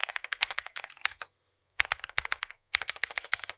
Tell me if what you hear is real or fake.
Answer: fake